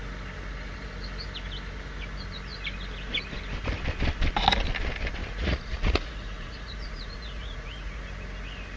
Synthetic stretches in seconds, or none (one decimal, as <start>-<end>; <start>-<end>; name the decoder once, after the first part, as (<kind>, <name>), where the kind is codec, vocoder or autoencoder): 5.2-8.0 (vocoder, Vocos)